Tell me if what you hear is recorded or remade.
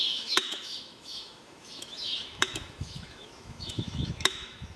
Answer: remade